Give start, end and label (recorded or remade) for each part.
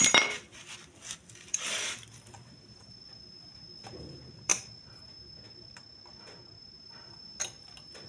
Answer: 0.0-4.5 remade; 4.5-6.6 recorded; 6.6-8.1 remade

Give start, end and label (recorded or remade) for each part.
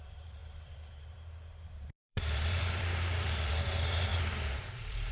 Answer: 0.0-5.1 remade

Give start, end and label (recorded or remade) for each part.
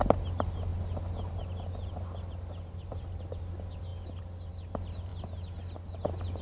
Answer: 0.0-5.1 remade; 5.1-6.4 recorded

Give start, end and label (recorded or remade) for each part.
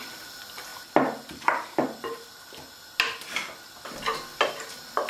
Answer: 0.0-0.7 recorded; 0.7-2.5 remade; 2.5-5.1 recorded